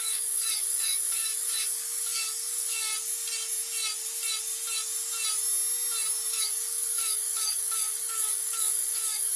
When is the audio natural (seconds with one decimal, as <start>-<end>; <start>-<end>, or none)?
2.9-6.3